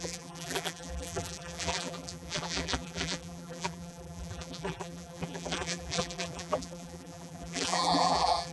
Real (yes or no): no